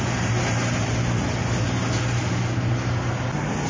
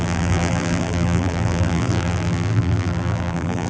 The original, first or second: first